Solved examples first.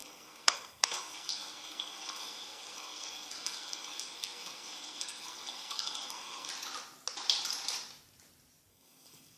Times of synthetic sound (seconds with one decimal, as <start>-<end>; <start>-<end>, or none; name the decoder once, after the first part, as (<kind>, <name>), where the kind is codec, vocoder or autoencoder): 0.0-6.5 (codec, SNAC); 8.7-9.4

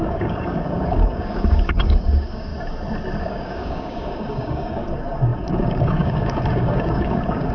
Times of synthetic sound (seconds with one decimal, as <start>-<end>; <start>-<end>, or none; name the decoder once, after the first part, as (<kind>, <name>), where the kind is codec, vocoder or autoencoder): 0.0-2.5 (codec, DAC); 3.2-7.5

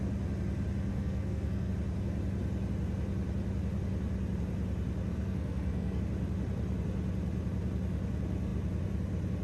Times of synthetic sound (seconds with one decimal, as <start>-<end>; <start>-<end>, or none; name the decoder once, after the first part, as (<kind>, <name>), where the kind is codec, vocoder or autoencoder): 0.9-1.7 (codec, SNAC); 5.1-6.0

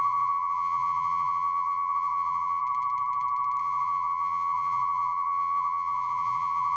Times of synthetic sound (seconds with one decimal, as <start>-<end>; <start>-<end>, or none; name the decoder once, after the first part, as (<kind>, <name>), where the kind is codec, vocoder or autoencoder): 0.0-2.6 (vocoder, Vocos); 3.6-6.8

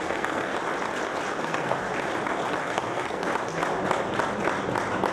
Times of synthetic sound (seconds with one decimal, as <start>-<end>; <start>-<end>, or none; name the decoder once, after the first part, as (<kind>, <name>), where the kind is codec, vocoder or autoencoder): 0.0-0.5 (codec, SNAC); 1.4-1.9; 2.6-3.3

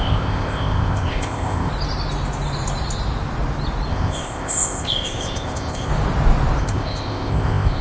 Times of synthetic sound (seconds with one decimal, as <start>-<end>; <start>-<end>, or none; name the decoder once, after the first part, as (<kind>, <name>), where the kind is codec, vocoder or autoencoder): 0.0-1.7 (codec, ZipCodec); 3.9-5.9; 6.6-7.8

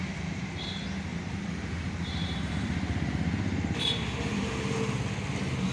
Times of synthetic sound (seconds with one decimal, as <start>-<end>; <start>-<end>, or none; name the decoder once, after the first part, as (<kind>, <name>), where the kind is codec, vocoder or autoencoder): 1.1-4.5 (vocoder, BigVGAN v2)

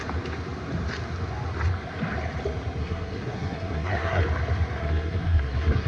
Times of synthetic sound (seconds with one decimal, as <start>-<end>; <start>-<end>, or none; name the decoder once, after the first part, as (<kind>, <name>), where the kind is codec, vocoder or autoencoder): 2.8-4.2 (codec, SNAC); 4.8-5.9